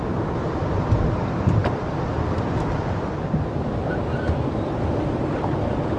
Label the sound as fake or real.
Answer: real